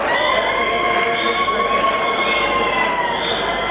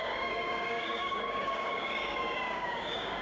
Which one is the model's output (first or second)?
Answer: second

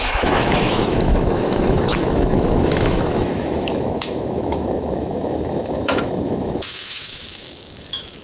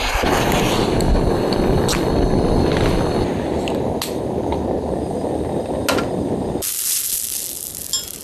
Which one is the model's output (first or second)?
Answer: first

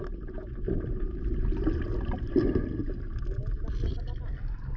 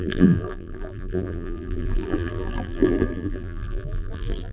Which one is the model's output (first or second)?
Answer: second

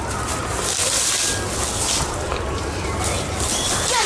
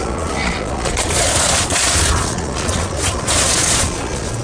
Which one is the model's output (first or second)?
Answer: second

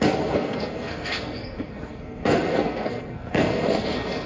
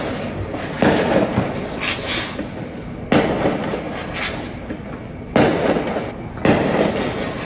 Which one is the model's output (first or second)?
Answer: first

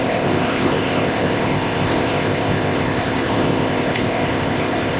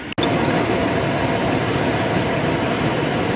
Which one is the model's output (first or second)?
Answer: first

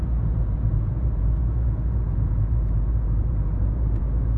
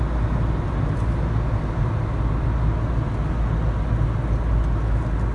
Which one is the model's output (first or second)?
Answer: first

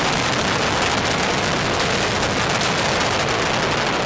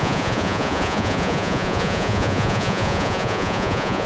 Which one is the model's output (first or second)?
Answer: second